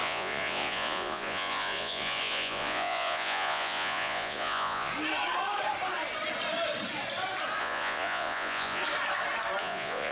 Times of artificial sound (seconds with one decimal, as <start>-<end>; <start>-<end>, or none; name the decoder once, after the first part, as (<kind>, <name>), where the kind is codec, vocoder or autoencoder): 0.0-4.9 (vocoder, Vocos); 7.6-8.8; 9.6-10.1